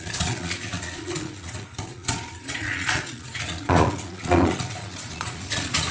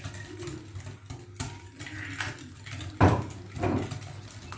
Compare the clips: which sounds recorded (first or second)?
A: second